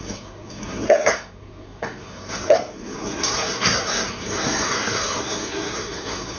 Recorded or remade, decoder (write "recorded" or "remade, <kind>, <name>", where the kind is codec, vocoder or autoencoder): remade, codec, SNAC